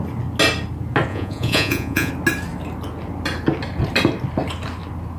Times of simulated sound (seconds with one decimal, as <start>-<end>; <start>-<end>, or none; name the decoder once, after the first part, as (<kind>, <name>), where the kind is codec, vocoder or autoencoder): 1.1-2.1 (vocoder, Vocos)